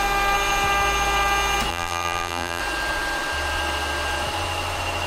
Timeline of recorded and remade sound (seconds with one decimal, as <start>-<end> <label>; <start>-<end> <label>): 0.0-1.7 recorded; 1.7-2.6 remade; 2.6-5.1 recorded